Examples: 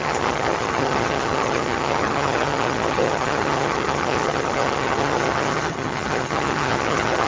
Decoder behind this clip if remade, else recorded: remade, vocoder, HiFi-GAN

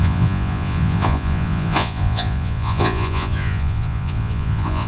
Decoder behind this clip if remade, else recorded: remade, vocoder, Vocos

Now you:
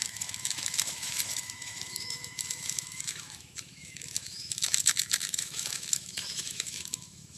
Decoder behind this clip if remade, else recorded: remade, autoencoder, DAC-VAE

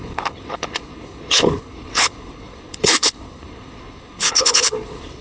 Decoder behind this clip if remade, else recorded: remade, codec, HILCodec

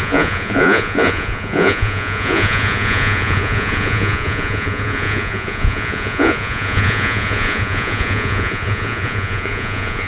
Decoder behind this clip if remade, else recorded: remade, vocoder, Vocos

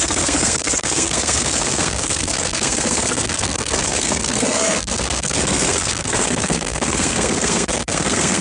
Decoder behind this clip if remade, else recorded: remade, codec, SNAC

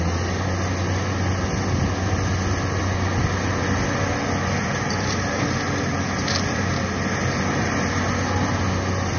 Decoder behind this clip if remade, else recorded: recorded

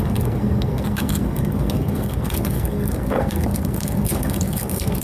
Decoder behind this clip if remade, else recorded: remade, codec, SNAC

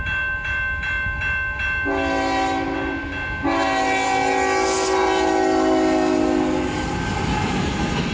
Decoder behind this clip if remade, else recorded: recorded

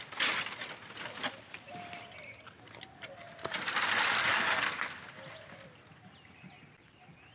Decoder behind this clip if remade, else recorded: recorded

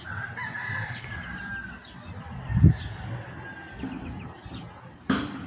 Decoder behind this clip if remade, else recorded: recorded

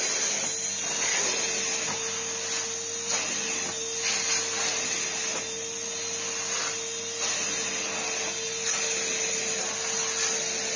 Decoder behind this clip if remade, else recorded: recorded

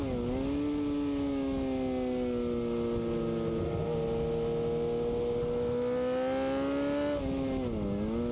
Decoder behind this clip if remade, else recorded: recorded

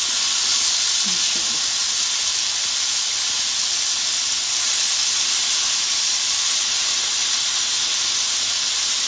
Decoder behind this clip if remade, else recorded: recorded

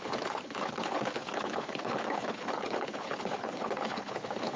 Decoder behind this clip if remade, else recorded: remade, codec, HILCodec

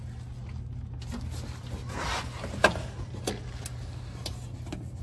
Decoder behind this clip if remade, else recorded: recorded